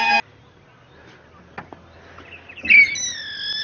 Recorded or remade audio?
recorded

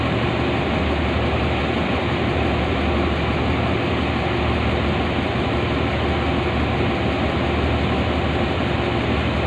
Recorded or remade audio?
recorded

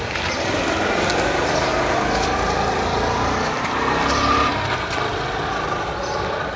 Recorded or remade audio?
recorded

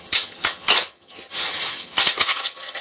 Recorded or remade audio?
remade